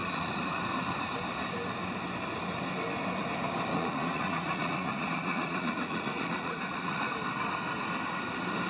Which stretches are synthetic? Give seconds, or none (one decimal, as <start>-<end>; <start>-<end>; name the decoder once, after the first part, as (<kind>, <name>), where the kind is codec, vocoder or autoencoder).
0.0-0.6 (vocoder, Vocos); 3.7-7.1